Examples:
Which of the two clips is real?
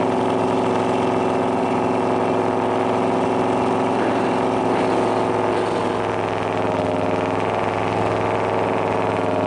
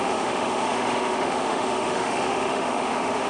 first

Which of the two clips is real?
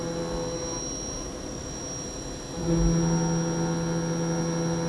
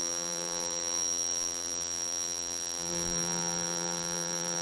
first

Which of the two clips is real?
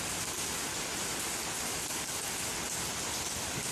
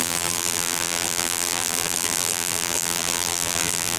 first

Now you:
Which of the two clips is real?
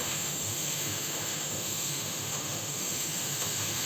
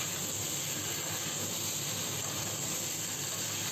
second